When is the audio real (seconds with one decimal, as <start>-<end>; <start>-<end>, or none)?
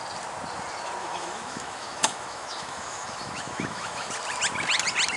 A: 0.0-1.0; 4.1-5.2